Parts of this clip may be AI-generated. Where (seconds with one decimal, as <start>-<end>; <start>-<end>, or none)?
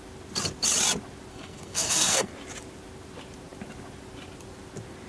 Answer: 1.3-2.3